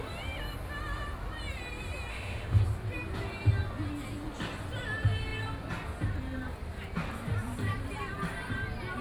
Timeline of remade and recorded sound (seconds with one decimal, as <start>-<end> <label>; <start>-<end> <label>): 0.0-2.1 recorded; 2.1-2.6 remade; 2.6-9.0 recorded